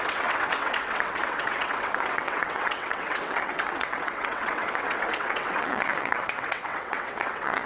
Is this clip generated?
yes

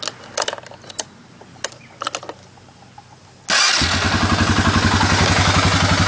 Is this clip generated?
no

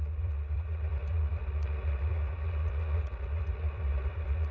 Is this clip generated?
yes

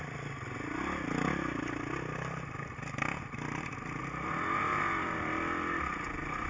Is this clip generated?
no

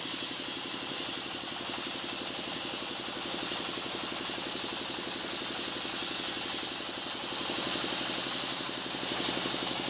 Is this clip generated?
no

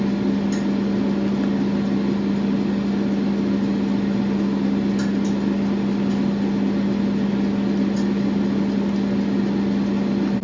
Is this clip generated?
no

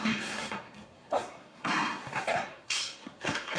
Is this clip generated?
yes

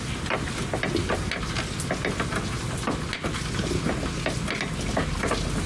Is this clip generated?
no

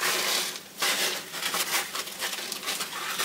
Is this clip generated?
yes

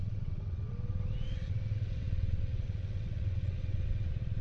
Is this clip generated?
yes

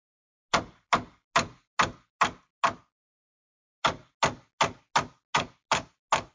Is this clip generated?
no